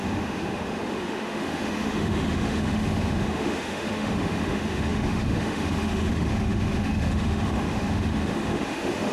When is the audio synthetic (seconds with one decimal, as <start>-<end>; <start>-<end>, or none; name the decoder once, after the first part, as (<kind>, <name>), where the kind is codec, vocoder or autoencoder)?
0.0-9.1 (autoencoder, DAC-VAE)